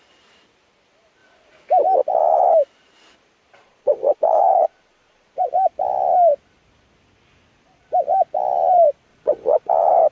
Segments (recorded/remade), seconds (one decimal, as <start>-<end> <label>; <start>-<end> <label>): 0.0-3.6 recorded; 3.6-5.5 remade; 5.5-9.1 recorded; 9.1-9.7 remade; 9.7-10.1 recorded